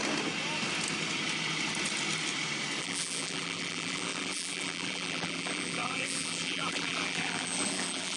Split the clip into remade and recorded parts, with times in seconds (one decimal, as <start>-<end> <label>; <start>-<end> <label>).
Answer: 0.0-2.8 recorded; 2.8-8.2 remade